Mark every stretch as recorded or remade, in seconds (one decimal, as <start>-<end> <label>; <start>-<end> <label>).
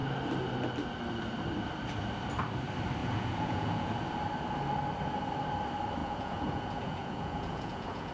0.0-3.0 recorded; 3.0-3.9 remade; 3.9-6.0 recorded; 6.0-8.1 remade